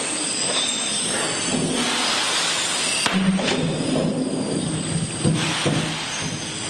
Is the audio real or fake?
real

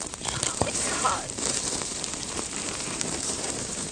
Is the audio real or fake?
fake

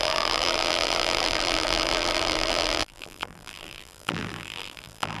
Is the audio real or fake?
fake